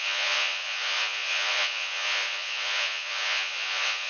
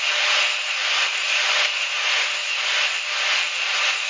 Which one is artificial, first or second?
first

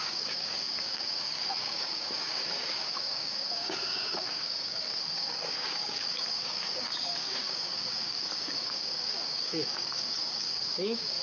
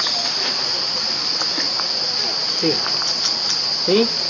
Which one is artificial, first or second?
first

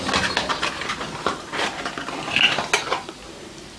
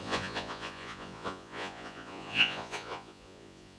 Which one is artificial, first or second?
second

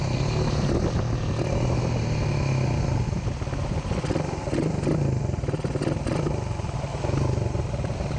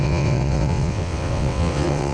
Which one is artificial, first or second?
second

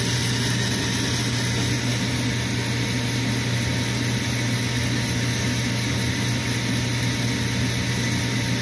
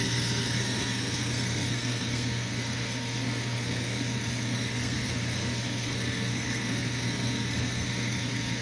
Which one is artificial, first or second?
second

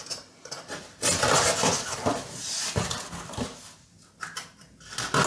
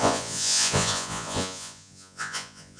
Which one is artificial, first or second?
second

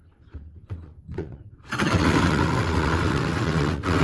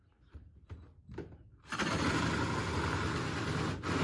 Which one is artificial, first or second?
first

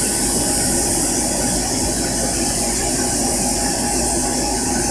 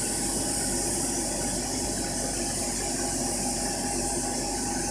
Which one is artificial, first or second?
first